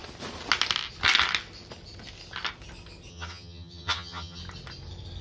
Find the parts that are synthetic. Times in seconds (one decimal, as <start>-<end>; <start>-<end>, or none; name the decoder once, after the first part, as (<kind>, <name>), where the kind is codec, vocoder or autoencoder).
3.1-4.4 (vocoder, HiFi-GAN)